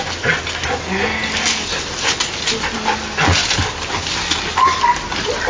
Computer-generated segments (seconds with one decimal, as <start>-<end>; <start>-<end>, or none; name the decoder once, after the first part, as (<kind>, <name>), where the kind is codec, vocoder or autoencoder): none